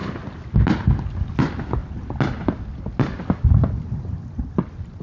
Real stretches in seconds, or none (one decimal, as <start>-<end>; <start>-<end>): 0.0-5.0